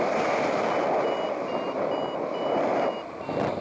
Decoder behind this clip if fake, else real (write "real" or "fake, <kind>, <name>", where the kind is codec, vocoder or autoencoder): real